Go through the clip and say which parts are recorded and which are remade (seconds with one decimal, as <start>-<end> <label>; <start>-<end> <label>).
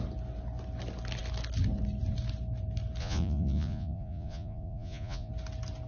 0.0-3.0 recorded; 3.0-5.3 remade; 5.3-5.9 recorded